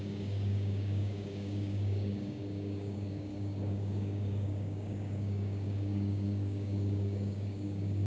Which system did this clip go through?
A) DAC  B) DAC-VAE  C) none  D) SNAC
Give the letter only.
A